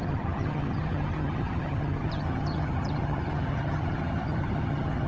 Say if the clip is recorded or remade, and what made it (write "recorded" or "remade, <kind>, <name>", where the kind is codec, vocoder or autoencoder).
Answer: remade, vocoder, HiFi-GAN